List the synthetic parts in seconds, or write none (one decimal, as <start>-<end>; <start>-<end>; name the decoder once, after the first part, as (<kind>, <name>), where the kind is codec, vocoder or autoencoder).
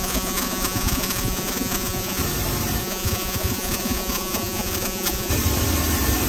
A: 0.0-2.2 (vocoder, Vocos); 2.8-5.3